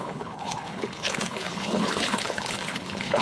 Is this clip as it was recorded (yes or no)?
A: no